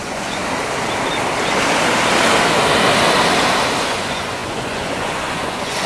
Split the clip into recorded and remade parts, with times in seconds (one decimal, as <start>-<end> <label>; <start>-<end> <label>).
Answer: 0.0-0.4 remade; 0.4-3.9 recorded; 3.9-5.9 remade